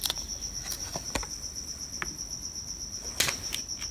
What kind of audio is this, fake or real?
real